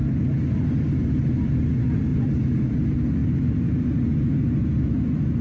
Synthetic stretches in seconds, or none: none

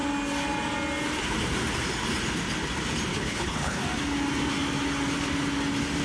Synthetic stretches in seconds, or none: 3.1-3.8

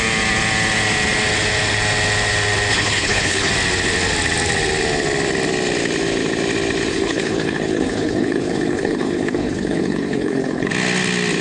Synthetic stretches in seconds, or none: 2.7-3.5; 6.9-10.7